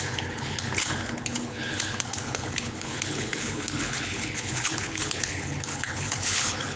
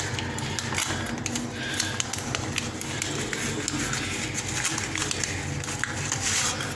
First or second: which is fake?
first